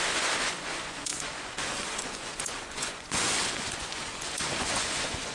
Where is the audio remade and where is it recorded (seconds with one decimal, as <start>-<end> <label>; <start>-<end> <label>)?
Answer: 0.0-5.3 remade